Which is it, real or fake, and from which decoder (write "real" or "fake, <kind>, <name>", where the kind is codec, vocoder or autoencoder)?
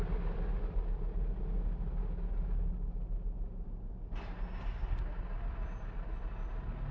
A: real